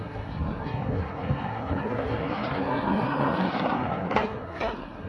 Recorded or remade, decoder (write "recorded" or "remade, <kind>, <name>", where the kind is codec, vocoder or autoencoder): remade, codec, SNAC